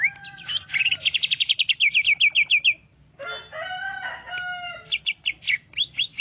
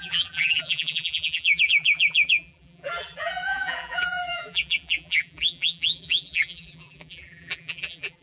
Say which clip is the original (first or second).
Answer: first